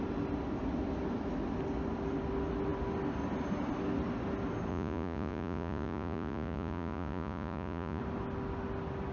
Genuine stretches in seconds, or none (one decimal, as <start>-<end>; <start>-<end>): 0.0-4.7; 8.0-9.1